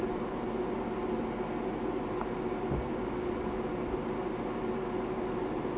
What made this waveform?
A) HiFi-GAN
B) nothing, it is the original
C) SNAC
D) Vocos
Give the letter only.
B